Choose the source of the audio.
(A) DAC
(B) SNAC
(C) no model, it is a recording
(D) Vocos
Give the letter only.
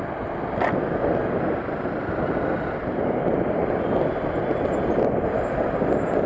C